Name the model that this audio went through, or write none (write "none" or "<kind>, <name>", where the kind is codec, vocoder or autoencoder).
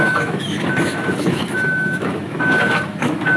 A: autoencoder, DAC-VAE